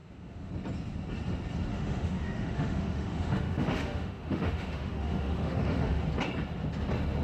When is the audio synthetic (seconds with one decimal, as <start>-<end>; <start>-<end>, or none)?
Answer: 0.0-0.5; 1.7-6.0